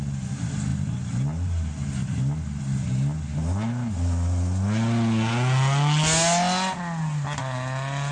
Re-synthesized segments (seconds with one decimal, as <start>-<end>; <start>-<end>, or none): none